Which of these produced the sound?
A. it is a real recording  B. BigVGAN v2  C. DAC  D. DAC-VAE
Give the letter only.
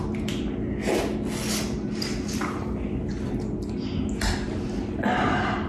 A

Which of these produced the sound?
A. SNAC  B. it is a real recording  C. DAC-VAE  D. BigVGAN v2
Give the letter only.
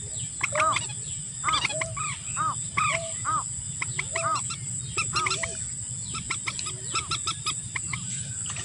B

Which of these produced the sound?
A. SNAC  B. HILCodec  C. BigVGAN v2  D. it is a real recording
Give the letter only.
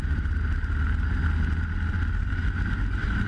D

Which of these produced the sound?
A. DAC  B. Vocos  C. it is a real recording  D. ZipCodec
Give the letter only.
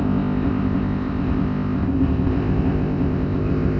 D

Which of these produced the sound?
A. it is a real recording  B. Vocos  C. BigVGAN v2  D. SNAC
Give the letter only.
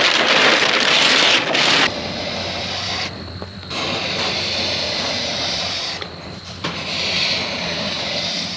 C